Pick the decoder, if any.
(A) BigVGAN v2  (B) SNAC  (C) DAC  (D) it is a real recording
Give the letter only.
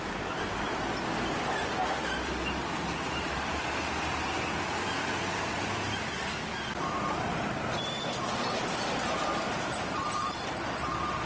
A